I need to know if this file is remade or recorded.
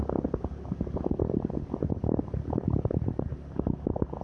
recorded